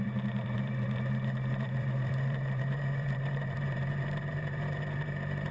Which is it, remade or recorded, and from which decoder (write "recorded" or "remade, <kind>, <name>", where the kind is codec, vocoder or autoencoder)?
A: remade, vocoder, BigVGAN v2